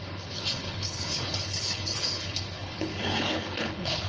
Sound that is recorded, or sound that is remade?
remade